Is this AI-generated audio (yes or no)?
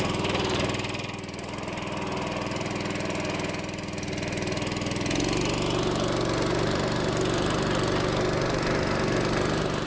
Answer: no